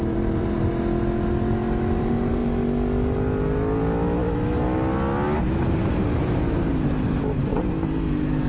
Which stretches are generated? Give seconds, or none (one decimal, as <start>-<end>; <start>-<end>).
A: 0.0-0.7; 1.9-2.4; 5.7-8.5